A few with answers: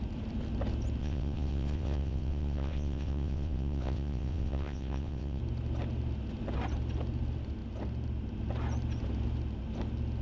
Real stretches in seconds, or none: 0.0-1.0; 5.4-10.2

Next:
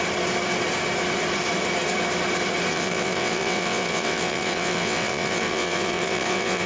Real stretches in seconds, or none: 0.0-2.7

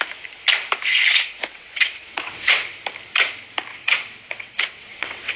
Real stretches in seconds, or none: 0.0-1.5; 2.8-3.7

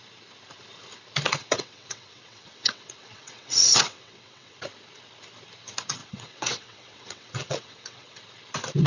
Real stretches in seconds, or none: 0.0-1.4; 4.6-6.0; 8.2-8.9